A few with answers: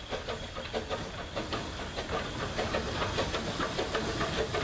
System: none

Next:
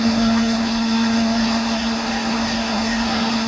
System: codec, SNAC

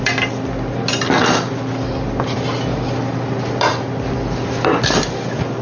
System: none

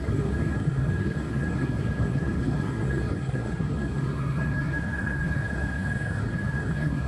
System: codec, SNAC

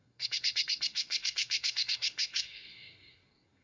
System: codec, SNAC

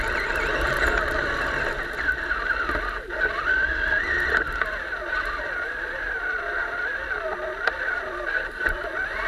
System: none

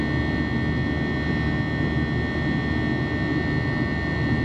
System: none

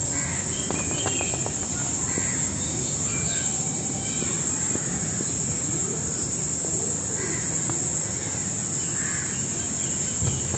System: none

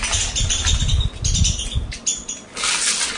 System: none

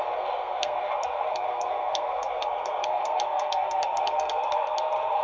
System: codec, SNAC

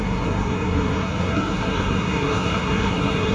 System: codec, SNAC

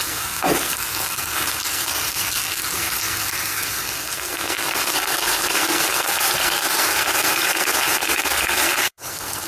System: codec, SNAC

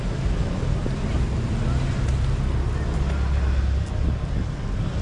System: none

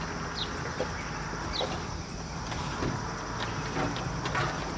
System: none